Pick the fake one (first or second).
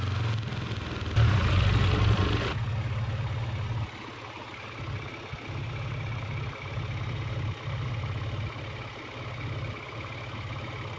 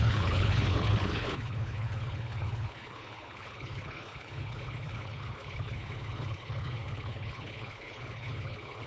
second